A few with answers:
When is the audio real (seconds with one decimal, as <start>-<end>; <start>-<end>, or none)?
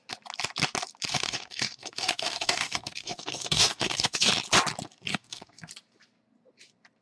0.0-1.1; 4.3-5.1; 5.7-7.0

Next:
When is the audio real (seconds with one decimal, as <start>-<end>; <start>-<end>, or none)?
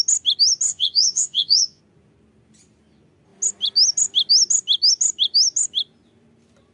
0.0-0.7; 1.8-6.7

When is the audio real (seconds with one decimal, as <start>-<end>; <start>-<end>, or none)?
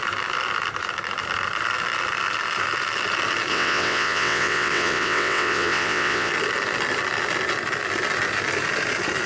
0.0-3.5; 6.3-9.3